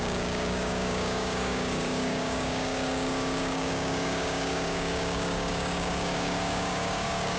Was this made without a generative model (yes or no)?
no